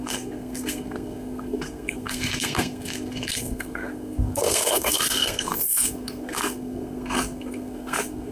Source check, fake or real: fake